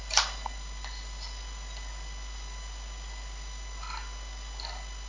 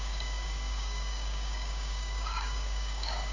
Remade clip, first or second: second